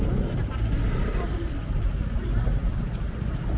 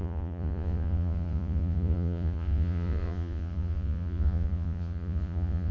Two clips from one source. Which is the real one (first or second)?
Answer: first